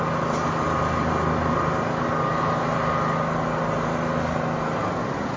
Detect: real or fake real